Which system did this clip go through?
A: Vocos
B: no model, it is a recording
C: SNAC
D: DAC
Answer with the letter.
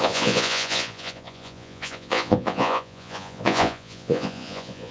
A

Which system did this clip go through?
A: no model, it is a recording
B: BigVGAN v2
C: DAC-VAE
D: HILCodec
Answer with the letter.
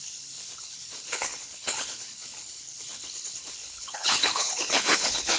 D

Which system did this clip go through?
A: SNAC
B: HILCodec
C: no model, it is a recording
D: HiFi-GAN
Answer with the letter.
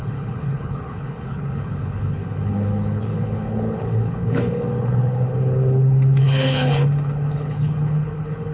B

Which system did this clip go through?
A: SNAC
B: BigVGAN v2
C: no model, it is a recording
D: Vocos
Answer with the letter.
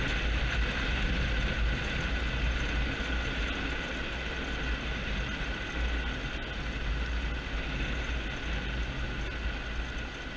C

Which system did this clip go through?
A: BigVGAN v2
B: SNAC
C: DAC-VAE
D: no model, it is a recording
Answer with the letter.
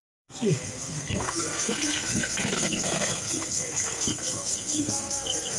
B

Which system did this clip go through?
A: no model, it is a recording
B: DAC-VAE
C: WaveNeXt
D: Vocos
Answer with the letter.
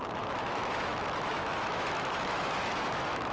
B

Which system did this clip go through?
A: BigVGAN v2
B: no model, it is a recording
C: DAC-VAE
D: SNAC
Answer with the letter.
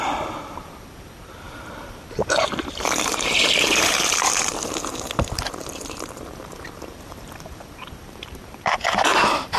A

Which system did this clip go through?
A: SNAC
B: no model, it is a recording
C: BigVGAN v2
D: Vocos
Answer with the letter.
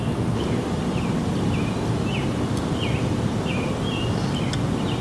B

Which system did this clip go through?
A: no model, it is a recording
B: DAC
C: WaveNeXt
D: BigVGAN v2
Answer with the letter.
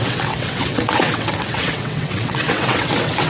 C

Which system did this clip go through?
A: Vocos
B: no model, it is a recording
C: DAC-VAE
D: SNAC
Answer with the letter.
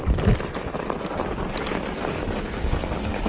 B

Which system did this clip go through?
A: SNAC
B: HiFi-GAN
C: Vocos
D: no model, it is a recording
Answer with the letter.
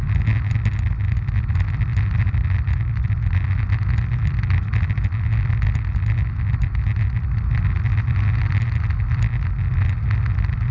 D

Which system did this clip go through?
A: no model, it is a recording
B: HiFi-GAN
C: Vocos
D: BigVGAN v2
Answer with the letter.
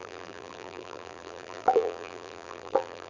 D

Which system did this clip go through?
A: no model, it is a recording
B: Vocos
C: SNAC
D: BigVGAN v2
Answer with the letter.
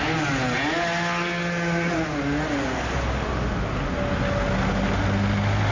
A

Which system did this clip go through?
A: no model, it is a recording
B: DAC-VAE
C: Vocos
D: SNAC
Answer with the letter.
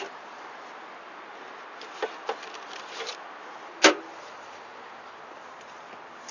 A